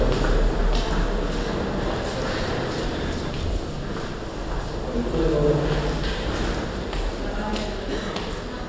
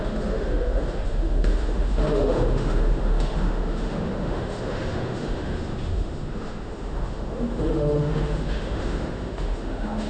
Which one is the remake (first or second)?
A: second